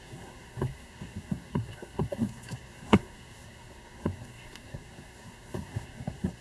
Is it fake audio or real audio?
fake